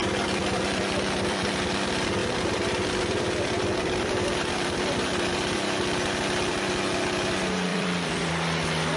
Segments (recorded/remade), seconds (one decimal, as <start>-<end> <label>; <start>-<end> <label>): 0.0-1.5 remade; 1.5-2.2 recorded; 2.2-5.8 remade; 5.8-7.7 recorded; 7.7-8.3 remade; 8.3-9.0 recorded